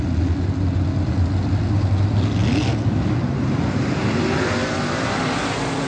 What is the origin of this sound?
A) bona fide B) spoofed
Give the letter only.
A